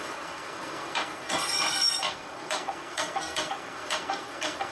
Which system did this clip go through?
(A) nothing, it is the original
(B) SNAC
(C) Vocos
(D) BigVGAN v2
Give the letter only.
B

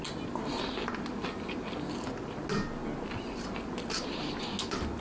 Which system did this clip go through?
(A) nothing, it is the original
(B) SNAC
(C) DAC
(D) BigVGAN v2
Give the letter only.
A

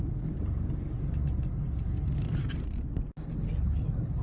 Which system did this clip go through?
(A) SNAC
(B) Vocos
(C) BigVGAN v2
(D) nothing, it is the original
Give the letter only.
D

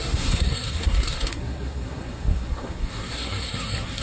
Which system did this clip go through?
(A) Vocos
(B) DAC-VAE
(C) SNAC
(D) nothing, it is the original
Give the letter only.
C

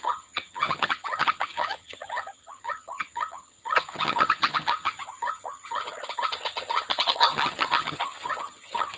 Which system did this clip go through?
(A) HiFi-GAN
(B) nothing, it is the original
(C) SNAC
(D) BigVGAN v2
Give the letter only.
A